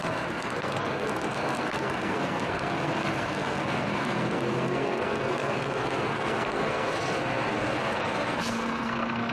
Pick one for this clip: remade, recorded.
remade